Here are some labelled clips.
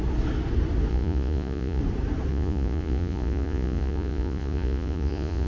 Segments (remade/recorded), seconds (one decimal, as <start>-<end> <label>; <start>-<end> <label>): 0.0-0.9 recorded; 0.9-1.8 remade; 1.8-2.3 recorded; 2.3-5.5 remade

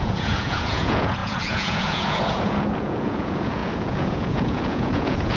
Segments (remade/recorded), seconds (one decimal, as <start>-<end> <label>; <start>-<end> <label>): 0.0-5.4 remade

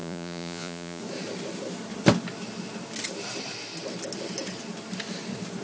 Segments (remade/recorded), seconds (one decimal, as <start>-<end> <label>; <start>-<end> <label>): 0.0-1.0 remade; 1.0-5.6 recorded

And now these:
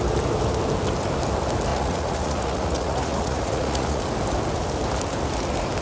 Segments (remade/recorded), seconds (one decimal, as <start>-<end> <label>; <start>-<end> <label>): 0.0-1.7 recorded; 1.7-4.0 remade; 4.0-5.8 recorded

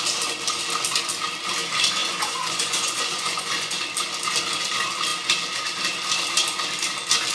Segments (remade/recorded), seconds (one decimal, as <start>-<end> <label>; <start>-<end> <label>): 0.0-2.0 recorded; 2.0-3.8 remade; 3.8-7.3 recorded

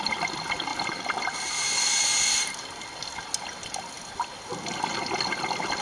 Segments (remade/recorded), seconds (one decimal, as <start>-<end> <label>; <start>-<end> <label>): 0.0-5.8 recorded

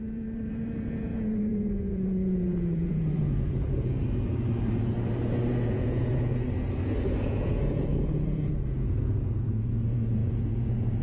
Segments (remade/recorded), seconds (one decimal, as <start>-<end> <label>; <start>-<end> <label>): 0.0-4.0 remade; 4.0-5.5 recorded; 5.5-6.3 remade; 6.3-7.0 recorded; 7.0-11.0 remade

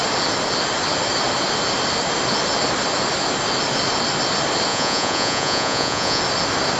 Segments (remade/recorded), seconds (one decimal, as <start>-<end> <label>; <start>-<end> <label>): 0.0-4.7 recorded; 4.7-6.2 remade; 6.2-6.8 recorded